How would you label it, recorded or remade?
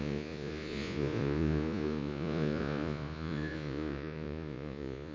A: remade